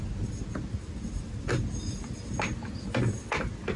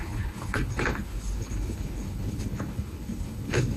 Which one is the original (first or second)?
first